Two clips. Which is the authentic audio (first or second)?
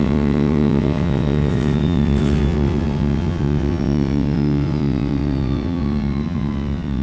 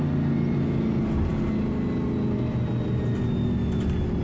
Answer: second